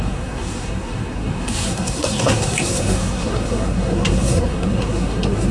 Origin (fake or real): fake